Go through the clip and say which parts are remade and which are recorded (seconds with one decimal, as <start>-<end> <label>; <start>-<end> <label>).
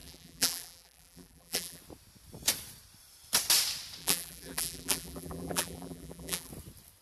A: 0.0-1.8 remade; 1.8-4.0 recorded; 4.0-6.5 remade; 6.5-7.0 recorded